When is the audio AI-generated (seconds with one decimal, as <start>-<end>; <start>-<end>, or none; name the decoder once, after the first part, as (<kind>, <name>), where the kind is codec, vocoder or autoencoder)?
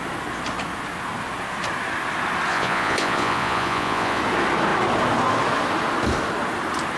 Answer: 2.5-4.2 (vocoder, Vocos)